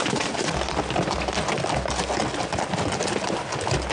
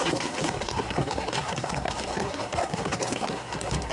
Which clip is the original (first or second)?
first